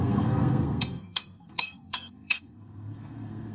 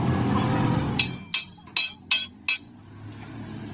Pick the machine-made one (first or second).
first